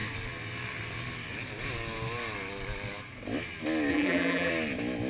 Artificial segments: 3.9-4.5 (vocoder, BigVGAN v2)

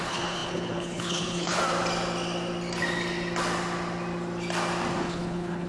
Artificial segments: 0.0-1.6 (codec, HILCodec); 5.0-5.7

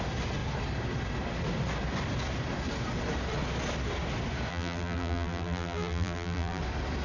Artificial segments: 4.5-6.6 (vocoder, BigVGAN v2)

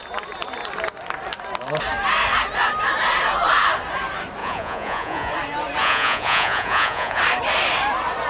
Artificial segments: 4.4-5.3 (vocoder, Vocos); 5.8-7.2

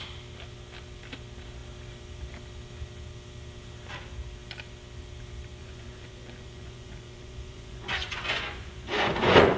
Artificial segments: 5.6-9.6 (vocoder, Vocos)

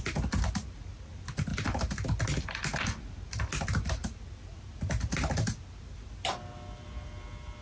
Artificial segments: none

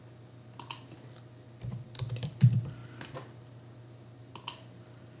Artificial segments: none

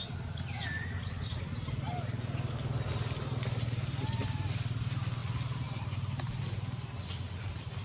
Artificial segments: none